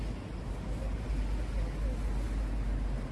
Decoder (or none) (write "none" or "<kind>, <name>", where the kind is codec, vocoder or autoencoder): none